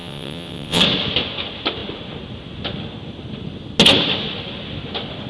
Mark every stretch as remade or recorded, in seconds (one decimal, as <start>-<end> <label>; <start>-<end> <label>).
0.0-0.8 remade; 0.8-5.3 recorded

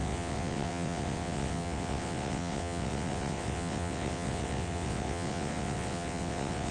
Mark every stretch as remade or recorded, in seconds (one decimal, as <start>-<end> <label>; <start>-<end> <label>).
0.0-6.7 remade

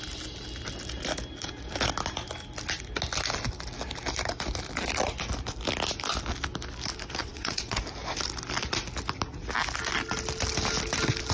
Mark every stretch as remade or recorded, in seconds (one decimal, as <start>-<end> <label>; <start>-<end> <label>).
0.0-7.2 recorded; 7.2-7.8 remade; 7.8-11.3 recorded

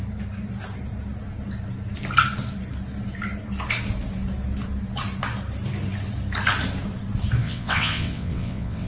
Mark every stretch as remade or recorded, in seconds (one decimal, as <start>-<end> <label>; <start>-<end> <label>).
0.0-7.4 recorded; 7.4-8.9 remade

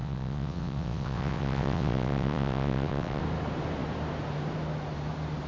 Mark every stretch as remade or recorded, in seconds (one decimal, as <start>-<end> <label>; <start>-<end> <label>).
0.0-3.2 remade; 3.2-5.5 recorded

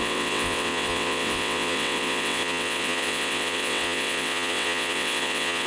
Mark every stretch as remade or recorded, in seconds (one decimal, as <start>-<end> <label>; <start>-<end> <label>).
0.0-5.7 remade

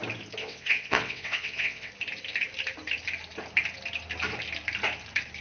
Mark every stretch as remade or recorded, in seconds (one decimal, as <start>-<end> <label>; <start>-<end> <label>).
0.0-0.4 recorded; 0.4-1.9 remade; 1.9-5.4 recorded

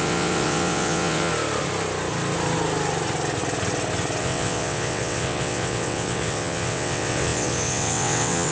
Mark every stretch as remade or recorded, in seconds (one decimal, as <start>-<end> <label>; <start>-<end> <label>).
0.0-1.3 remade; 1.3-4.2 recorded; 4.2-8.5 remade